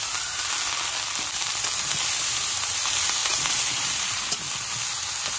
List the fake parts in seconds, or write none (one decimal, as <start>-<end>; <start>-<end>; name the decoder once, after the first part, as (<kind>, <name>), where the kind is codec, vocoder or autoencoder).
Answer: 3.2-4.4 (vocoder, BigVGAN v2)